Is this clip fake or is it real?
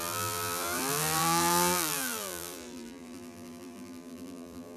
fake